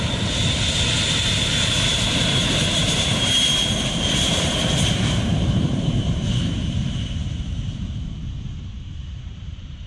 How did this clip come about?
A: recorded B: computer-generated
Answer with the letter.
B